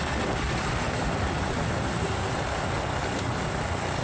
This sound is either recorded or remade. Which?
recorded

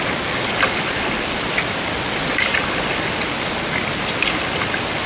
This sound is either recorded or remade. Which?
recorded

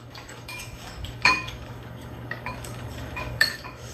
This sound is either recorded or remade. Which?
remade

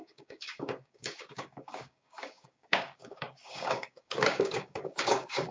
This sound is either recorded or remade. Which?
remade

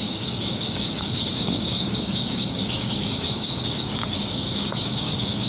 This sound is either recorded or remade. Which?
remade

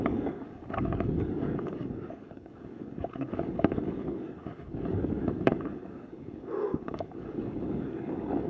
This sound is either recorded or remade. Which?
remade